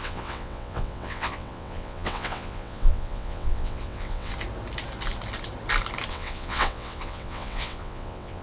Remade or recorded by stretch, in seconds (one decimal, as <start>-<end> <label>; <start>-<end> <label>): 0.0-4.3 remade; 4.3-6.1 recorded; 6.1-8.4 remade